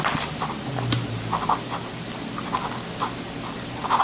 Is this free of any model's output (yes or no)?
yes